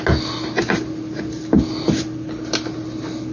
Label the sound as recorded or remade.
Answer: recorded